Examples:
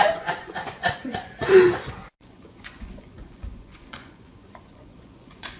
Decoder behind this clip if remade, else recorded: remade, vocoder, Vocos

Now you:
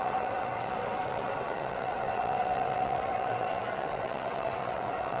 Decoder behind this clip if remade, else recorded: remade, vocoder, WaveNeXt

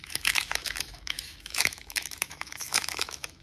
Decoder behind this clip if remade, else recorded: remade, autoencoder, DAC-VAE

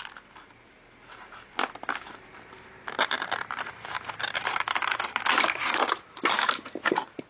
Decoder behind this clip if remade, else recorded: recorded